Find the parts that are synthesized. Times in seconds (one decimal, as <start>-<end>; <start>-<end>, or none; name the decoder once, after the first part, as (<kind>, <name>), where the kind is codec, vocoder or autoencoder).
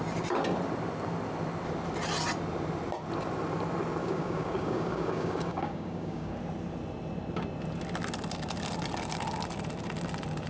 4.0-6.4 (codec, DAC)